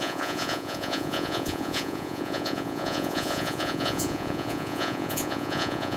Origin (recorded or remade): remade